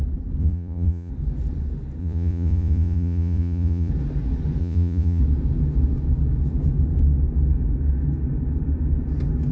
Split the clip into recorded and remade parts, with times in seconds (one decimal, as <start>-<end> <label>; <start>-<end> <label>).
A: 0.0-0.4 recorded; 0.4-1.1 remade; 1.1-2.0 recorded; 2.0-3.9 remade; 3.9-4.6 recorded; 4.6-5.2 remade; 5.2-9.5 recorded